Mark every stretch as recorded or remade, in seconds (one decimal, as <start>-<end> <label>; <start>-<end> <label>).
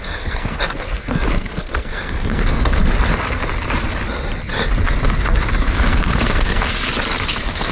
0.0-2.8 remade; 2.8-5.6 recorded; 5.6-6.7 remade; 6.7-7.3 recorded; 7.3-7.7 remade